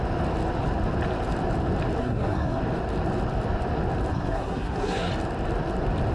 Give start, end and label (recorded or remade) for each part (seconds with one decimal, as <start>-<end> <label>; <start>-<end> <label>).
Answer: 0.0-2.0 recorded; 2.0-2.6 remade; 2.6-4.1 recorded; 4.1-5.1 remade; 5.1-6.1 recorded